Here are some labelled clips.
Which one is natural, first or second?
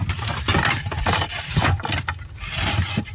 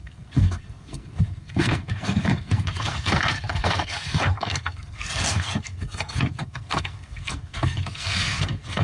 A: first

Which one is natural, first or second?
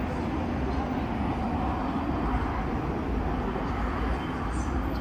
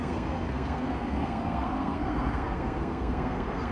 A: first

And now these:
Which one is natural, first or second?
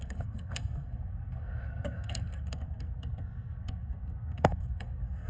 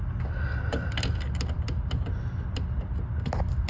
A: second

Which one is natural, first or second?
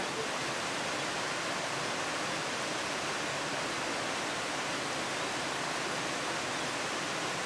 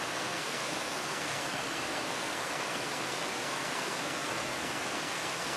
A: first